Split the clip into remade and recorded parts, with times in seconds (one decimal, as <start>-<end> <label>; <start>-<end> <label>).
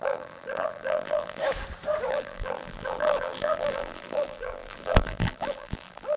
0.0-1.4 remade; 1.4-2.1 recorded; 2.1-6.2 remade